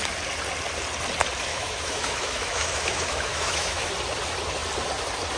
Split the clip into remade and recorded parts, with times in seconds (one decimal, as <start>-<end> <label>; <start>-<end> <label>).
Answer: 0.0-1.5 recorded; 1.5-3.9 remade; 3.9-5.4 recorded